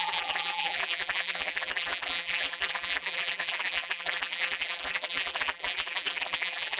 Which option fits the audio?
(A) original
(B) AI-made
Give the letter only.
B